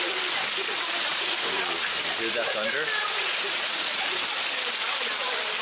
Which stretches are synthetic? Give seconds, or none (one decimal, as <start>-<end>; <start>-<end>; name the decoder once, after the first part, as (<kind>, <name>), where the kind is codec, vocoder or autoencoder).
1.1-1.6 (vocoder, Vocos); 3.0-4.2

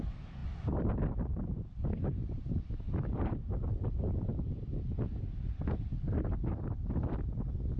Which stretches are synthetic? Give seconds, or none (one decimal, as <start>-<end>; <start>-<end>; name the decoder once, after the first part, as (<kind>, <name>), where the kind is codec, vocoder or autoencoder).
0.4-3.8 (vocoder, BigVGAN v2)